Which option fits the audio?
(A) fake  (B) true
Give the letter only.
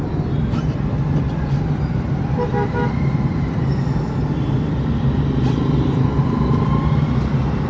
B